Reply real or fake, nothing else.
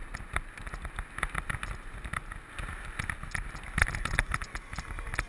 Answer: real